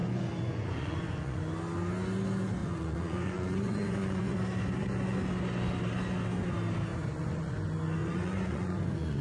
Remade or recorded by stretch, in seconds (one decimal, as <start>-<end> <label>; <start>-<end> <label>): 0.0-1.4 remade; 1.4-2.6 recorded; 2.6-4.4 remade; 4.4-6.9 recorded; 6.9-7.5 remade; 7.5-8.0 recorded; 8.0-9.2 remade